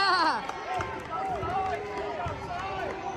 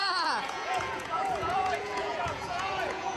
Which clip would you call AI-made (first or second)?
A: second